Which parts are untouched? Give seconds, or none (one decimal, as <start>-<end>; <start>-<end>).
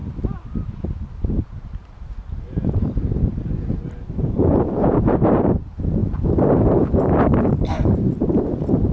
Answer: 0.0-1.1